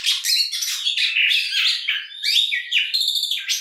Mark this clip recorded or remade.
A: recorded